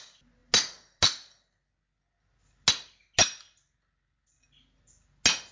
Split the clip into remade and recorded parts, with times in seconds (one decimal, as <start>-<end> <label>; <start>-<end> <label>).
0.0-5.5 recorded